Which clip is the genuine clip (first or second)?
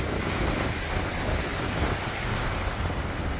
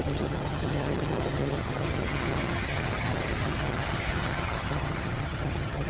first